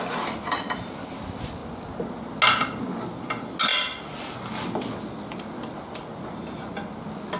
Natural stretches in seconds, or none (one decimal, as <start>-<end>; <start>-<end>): 0.0-7.4